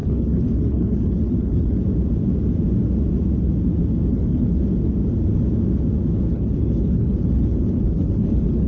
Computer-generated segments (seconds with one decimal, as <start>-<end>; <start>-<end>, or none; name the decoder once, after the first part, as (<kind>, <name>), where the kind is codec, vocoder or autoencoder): 0.0-1.8 (codec, HILCodec); 4.1-4.6; 6.3-8.7

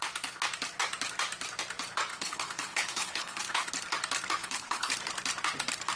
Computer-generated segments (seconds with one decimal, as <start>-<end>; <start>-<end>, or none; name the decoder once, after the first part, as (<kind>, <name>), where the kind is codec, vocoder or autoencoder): 2.1-3.7 (codec, HILCodec); 4.4-4.9

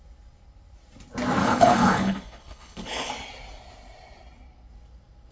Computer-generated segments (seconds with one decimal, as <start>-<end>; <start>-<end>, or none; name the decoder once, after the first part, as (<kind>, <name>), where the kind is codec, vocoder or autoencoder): 1.4-3.1 (codec, HILCodec)

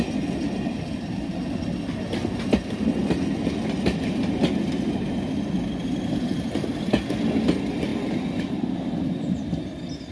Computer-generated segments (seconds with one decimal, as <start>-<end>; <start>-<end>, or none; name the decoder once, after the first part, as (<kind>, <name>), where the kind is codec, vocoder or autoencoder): none